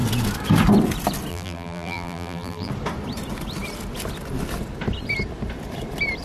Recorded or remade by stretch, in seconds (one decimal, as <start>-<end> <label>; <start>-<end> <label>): 0.0-1.3 recorded; 1.3-2.7 remade; 2.7-6.2 recorded